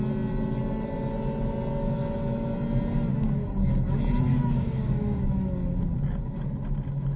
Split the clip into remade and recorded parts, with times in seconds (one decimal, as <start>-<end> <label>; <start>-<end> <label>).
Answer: 0.0-3.1 recorded; 3.1-3.7 remade; 3.7-4.3 recorded; 4.3-5.2 remade; 5.2-7.2 recorded